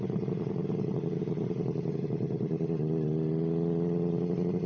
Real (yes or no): yes